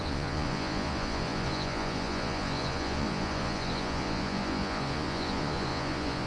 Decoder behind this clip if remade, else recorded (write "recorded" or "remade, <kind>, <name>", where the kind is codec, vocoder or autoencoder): remade, vocoder, Vocos